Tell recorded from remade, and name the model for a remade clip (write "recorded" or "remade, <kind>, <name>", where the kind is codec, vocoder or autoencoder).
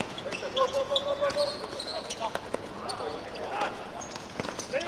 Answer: remade, vocoder, Vocos